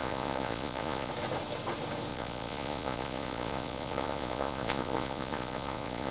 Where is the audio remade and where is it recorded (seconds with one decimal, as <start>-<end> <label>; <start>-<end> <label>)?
0.0-1.1 remade; 1.1-2.1 recorded; 2.1-6.1 remade